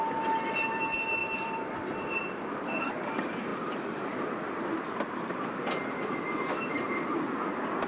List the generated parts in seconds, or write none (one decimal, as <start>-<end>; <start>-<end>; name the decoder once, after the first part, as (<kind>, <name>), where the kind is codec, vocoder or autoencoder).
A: 1.2-2.9 (vocoder, BigVGAN v2); 3.5-4.0